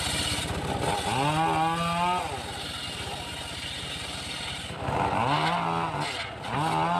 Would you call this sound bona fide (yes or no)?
yes